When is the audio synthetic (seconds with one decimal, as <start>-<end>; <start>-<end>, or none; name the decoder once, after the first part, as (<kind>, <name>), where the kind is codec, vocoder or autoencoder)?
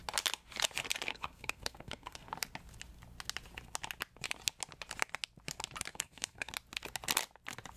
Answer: 1.1-2.3 (codec, SNAC); 5.9-6.5